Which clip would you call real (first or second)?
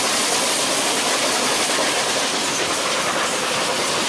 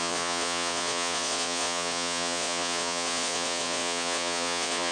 first